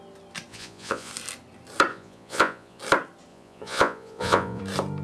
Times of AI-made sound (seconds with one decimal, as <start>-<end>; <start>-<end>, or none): 0.5-1.1; 1.9-2.8; 3.3-4.6